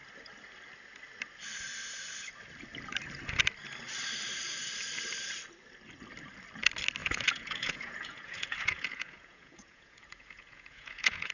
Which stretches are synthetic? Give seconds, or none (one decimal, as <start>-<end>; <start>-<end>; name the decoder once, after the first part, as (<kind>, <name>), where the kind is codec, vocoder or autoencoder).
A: 7.0-11.3 (vocoder, Vocos)